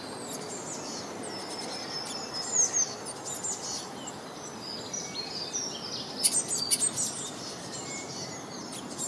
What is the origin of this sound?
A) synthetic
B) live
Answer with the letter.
B